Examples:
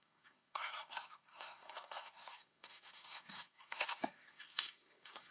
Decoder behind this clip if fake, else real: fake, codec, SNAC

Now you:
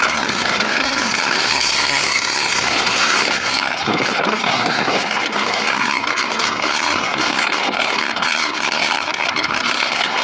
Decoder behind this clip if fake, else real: fake, codec, SNAC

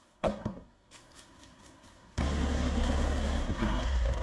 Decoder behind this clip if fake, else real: fake, codec, SNAC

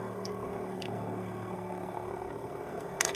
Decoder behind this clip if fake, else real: fake, codec, SNAC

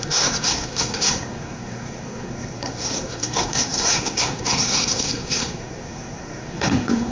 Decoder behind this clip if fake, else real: fake, codec, SNAC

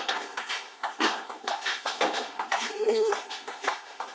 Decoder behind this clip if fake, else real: fake, codec, SNAC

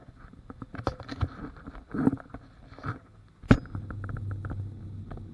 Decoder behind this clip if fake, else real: real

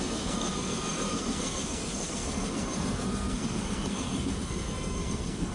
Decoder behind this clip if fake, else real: fake, codec, SNAC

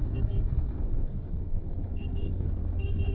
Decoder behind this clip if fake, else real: fake, codec, SNAC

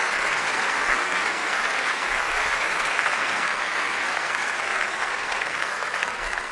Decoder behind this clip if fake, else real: fake, codec, SNAC